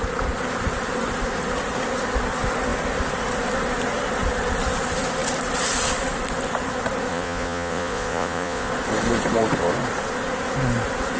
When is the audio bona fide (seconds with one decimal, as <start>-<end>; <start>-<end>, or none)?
0.0-7.1; 8.7-11.2